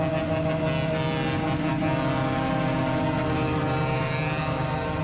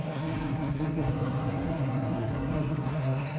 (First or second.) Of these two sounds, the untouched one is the first